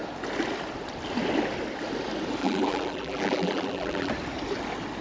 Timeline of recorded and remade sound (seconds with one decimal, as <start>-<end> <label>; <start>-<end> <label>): 0.0-2.4 recorded; 2.4-4.1 remade; 4.1-5.0 recorded

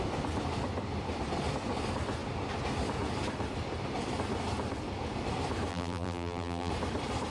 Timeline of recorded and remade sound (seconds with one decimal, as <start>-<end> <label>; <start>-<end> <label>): 0.0-5.7 recorded; 5.7-6.7 remade; 6.7-7.3 recorded

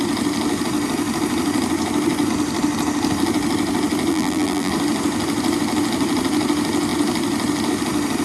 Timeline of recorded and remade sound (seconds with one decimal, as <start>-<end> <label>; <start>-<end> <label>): 0.0-4.1 recorded; 4.1-4.7 remade; 4.7-8.2 recorded

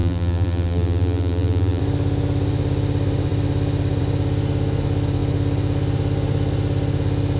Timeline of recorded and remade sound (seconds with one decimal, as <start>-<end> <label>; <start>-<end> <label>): 0.0-1.8 remade; 1.8-7.4 recorded

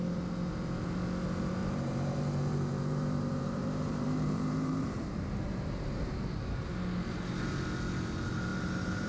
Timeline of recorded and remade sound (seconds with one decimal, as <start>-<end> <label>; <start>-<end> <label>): 0.0-1.6 recorded; 1.6-6.2 remade; 6.2-8.5 recorded; 8.5-9.1 remade

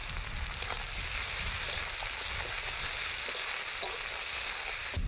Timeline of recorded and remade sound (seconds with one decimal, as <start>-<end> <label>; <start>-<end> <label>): 0.0-1.2 recorded; 1.2-1.8 remade; 1.8-5.1 recorded

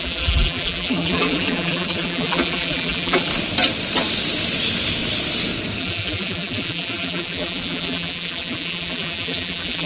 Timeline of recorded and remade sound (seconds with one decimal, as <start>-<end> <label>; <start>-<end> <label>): 0.0-3.3 remade; 3.3-5.8 recorded; 5.8-9.9 remade